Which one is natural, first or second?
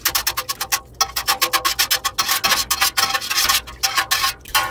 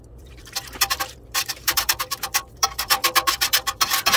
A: first